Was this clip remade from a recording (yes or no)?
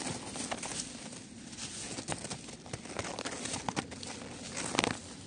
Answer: no